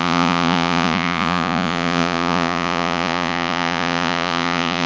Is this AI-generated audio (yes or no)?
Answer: yes